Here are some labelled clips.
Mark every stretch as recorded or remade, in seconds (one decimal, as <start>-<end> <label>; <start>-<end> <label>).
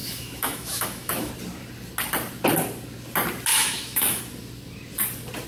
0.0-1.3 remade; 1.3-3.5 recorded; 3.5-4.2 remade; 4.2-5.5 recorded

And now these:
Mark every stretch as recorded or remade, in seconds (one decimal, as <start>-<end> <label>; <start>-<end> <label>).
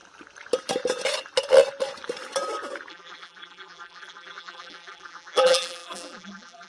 0.0-2.9 recorded; 2.9-6.7 remade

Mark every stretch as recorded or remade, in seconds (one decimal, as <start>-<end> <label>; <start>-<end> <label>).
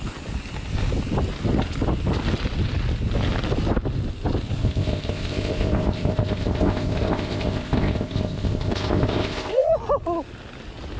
0.0-4.6 recorded; 4.6-9.7 remade; 9.7-11.0 recorded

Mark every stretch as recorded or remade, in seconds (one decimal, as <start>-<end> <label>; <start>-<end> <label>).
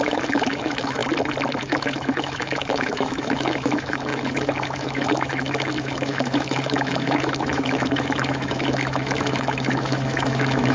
0.0-1.0 remade; 1.0-1.6 recorded; 1.6-10.7 remade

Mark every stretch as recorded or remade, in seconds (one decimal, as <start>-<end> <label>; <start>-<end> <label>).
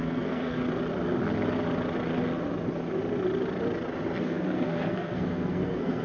0.0-0.6 remade; 0.6-4.2 recorded; 4.2-6.0 remade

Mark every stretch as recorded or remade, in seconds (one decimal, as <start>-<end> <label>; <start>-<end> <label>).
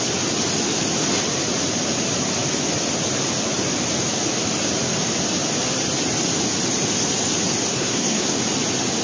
0.0-7.7 recorded; 7.7-8.4 remade; 8.4-9.0 recorded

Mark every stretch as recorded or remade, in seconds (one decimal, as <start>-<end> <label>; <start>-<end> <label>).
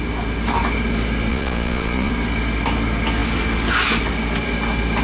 0.0-1.3 recorded; 1.3-2.1 remade; 2.1-5.0 recorded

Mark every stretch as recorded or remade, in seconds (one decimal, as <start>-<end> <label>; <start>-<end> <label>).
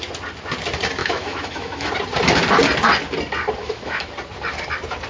0.0-1.0 recorded; 1.0-1.9 remade; 1.9-3.6 recorded; 3.6-4.1 remade; 4.1-5.1 recorded